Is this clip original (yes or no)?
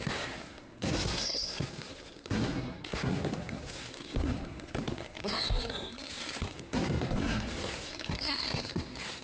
no